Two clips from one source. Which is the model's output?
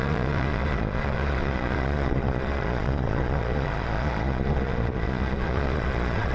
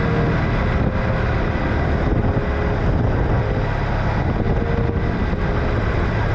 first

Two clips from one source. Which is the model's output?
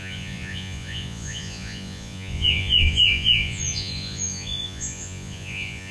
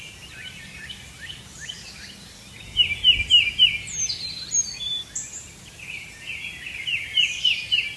first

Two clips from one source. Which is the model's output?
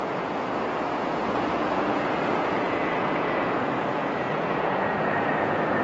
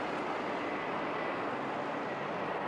first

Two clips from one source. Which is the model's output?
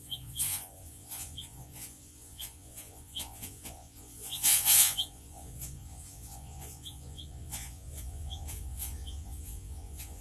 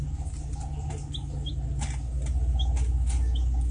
first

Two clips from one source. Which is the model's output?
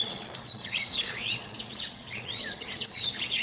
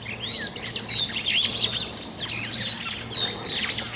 first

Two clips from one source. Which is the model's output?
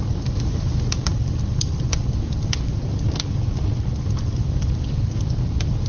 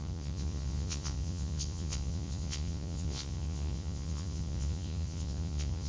second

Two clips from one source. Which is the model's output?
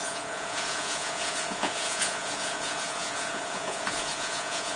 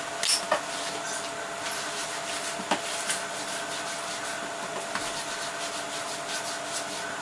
first